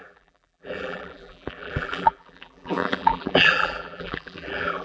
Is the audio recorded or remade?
remade